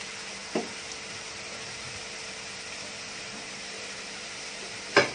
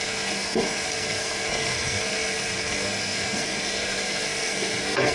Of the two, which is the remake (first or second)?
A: second